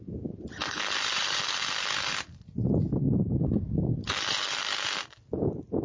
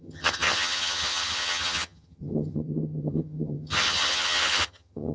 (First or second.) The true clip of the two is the first